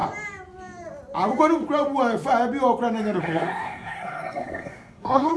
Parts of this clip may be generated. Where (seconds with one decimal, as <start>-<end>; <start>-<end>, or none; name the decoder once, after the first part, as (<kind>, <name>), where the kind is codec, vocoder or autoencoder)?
3.2-5.4 (codec, SNAC)